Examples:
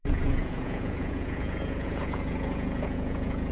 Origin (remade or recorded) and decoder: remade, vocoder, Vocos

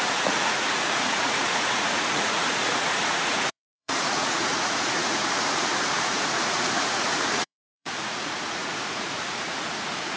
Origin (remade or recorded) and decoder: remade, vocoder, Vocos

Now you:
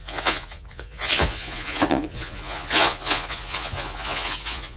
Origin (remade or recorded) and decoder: remade, vocoder, Vocos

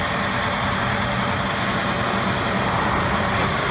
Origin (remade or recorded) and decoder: recorded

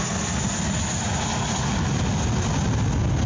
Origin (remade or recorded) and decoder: recorded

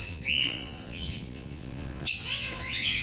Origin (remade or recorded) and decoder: remade, vocoder, Vocos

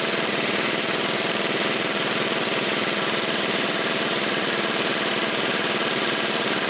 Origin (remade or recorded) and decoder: recorded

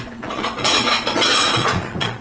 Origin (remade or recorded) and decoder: remade, vocoder, Vocos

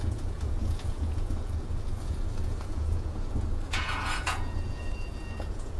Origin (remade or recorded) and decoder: remade, vocoder, Vocos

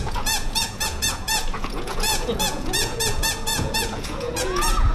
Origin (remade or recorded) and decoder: remade, vocoder, Vocos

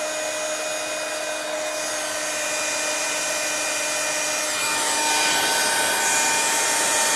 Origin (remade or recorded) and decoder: recorded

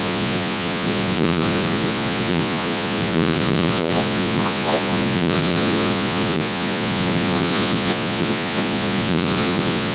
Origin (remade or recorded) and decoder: remade, vocoder, Vocos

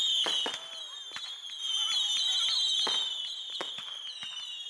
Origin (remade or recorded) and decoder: recorded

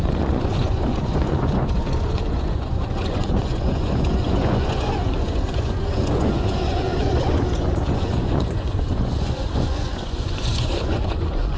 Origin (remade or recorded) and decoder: remade, vocoder, Vocos